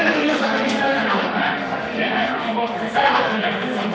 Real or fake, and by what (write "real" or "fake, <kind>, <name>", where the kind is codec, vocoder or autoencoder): fake, autoencoder, DAC-VAE